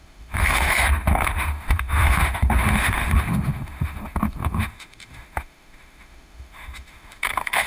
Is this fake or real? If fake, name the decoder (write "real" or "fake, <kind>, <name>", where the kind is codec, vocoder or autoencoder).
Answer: fake, autoencoder, DAC-VAE